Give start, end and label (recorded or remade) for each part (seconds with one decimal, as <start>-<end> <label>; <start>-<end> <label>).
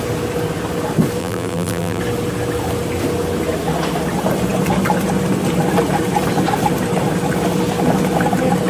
0.0-1.2 recorded; 1.2-2.0 remade; 2.0-8.7 recorded